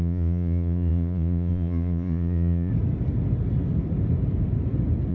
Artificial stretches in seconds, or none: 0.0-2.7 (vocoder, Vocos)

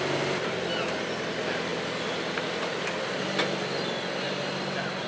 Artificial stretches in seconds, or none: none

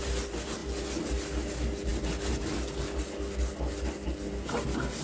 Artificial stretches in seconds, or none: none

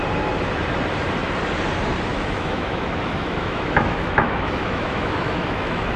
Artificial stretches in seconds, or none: 2.1-6.0 (autoencoder, DAC-VAE)

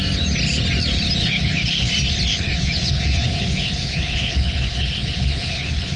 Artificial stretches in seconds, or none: 1.2-1.9 (codec, HILCodec); 2.3-6.0